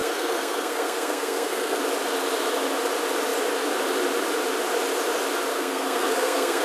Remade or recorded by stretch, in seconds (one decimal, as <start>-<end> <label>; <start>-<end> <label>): 0.0-1.8 remade; 1.8-5.5 recorded; 5.5-6.6 remade